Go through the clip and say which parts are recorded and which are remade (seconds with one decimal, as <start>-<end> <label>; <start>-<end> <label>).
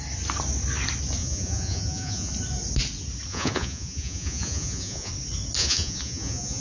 0.0-1.2 recorded; 1.2-2.3 remade; 2.3-3.3 recorded; 3.3-5.1 remade; 5.1-5.6 recorded; 5.6-6.6 remade